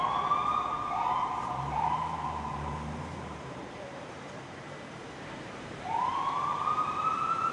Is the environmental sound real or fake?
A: fake